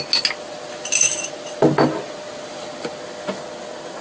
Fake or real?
real